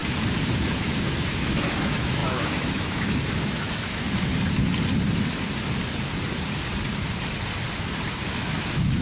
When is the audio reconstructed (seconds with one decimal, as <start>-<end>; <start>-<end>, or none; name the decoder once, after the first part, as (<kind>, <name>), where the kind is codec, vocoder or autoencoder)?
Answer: 0.6-4.3 (autoencoder, DAC-VAE); 8.3-9.0